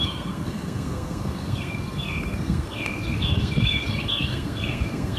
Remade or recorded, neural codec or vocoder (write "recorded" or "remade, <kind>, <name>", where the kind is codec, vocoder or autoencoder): remade, codec, SNAC